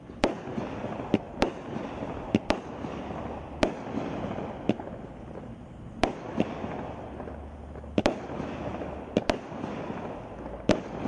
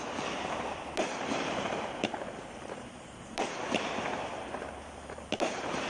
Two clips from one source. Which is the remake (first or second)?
second